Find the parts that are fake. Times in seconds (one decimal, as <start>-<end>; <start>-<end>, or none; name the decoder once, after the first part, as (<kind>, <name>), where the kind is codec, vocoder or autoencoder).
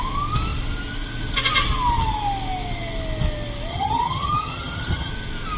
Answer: 3.7-5.1 (vocoder, HiFi-GAN)